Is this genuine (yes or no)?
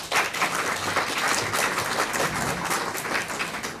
yes